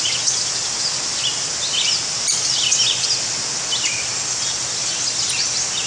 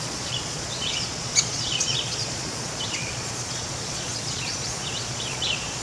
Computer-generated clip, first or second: second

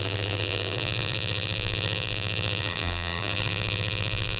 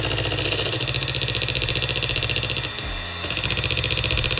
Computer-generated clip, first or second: first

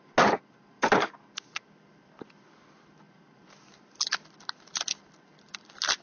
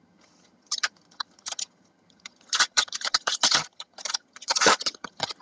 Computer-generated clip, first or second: second